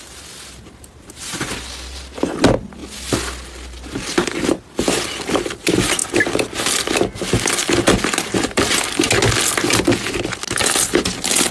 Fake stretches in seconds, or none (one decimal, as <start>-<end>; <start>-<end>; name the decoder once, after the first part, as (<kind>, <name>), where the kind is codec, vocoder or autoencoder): none